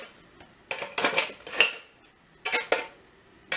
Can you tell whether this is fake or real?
real